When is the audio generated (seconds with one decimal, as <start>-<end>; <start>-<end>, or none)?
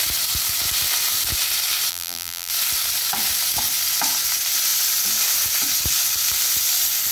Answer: 1.9-2.5